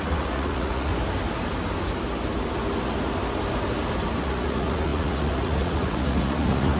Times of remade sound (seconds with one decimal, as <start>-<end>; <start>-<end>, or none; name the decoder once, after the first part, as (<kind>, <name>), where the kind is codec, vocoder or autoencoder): 0.0-0.9 (vocoder, Vocos); 4.2-6.8